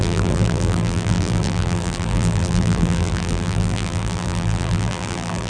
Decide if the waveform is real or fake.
fake